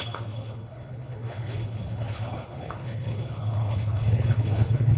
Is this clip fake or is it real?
fake